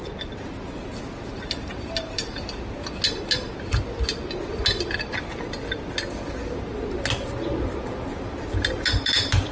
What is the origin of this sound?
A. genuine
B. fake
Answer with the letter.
A